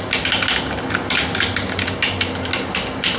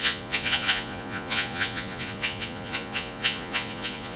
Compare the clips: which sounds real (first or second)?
first